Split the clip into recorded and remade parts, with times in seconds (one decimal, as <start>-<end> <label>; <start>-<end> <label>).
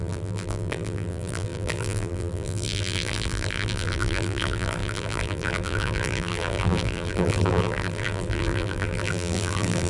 0.0-9.9 remade